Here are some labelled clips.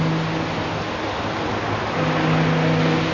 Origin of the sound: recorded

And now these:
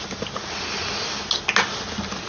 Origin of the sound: recorded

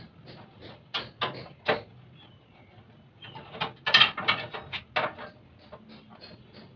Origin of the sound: recorded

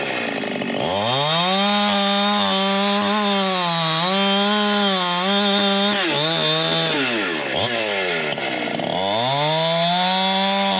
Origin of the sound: recorded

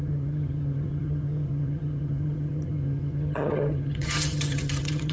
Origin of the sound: remade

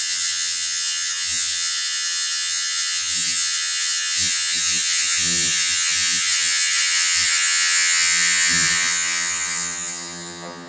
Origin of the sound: remade